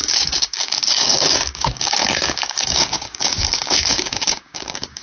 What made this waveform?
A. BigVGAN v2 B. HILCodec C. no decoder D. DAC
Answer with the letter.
D